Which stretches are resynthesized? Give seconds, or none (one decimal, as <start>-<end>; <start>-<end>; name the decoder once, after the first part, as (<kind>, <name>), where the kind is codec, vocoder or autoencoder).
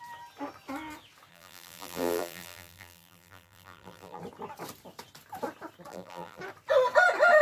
1.3-4.2 (vocoder, BigVGAN v2); 5.9-6.4